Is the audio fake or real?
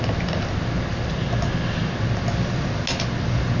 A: real